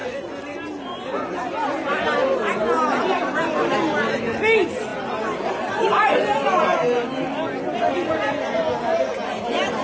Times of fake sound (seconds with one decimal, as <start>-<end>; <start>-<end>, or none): none